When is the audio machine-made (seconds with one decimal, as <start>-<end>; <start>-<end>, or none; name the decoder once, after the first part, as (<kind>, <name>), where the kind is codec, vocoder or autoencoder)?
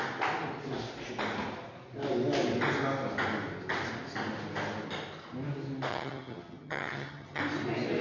5.9-7.4 (vocoder, HiFi-GAN)